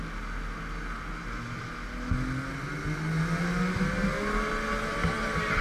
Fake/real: real